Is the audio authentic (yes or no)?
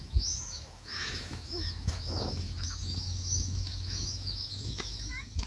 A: no